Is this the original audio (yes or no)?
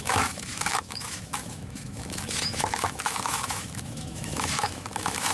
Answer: no